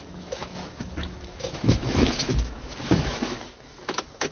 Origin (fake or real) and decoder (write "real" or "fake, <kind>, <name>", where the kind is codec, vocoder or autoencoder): fake, autoencoder, DAC-VAE